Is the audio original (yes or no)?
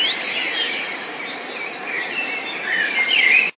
yes